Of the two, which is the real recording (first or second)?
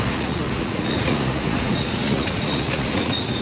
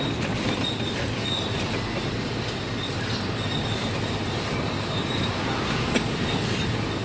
second